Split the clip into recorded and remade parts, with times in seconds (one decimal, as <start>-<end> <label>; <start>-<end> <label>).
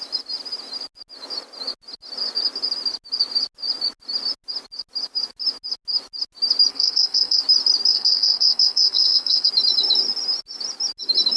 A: 0.0-6.7 recorded; 6.7-7.4 remade; 7.4-7.9 recorded; 7.9-9.5 remade; 9.5-11.4 recorded